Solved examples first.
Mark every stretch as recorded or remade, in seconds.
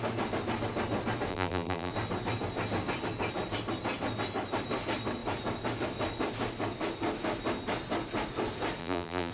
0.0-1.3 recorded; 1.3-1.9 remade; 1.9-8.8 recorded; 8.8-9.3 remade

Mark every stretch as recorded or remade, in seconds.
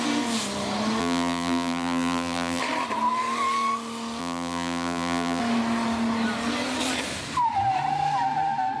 0.0-1.0 recorded; 1.0-2.6 remade; 2.6-4.2 recorded; 4.2-5.4 remade; 5.4-8.8 recorded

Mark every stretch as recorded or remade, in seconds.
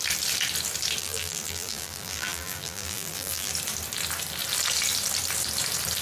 0.0-1.0 recorded; 1.0-3.5 remade; 3.5-6.0 recorded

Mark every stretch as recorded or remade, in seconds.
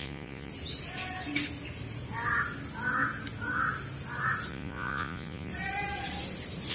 0.0-0.5 remade; 0.5-4.5 recorded; 4.5-5.5 remade; 5.5-6.7 recorded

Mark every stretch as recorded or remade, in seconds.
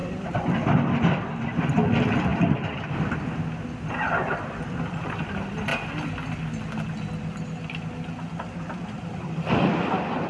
0.0-5.7 remade; 5.7-8.9 recorded; 8.9-10.3 remade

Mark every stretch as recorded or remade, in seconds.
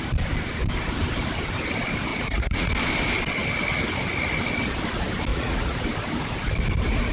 0.0-2.1 recorded; 2.1-2.7 remade; 2.7-5.3 recorded; 5.3-5.8 remade; 5.8-7.1 recorded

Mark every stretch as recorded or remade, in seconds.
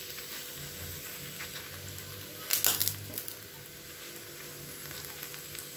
0.0-5.8 recorded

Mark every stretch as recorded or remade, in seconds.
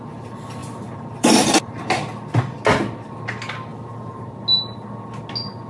0.0-0.6 recorded; 0.6-1.8 remade; 1.8-3.7 recorded; 3.7-4.3 remade; 4.3-5.7 recorded